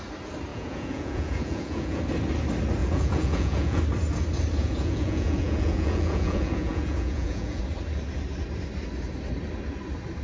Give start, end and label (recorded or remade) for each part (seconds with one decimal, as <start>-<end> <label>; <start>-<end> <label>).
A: 0.0-0.5 recorded; 0.5-2.0 remade; 2.0-2.8 recorded; 2.8-3.8 remade; 3.8-4.6 recorded; 4.6-7.6 remade; 7.6-10.2 recorded